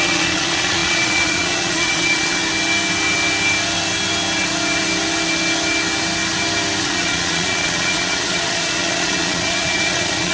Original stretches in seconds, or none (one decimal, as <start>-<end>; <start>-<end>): 2.4-6.8